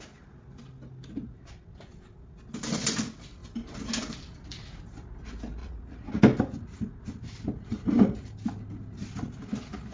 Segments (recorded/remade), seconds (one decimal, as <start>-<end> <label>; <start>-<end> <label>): 0.0-5.6 recorded; 5.6-6.2 remade; 6.2-9.9 recorded